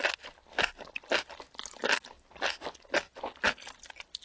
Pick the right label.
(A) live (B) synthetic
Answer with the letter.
A